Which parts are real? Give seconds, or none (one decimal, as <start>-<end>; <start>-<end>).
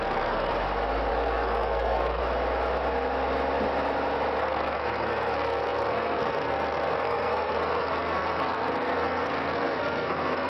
0.5-1.1; 2.2-4.4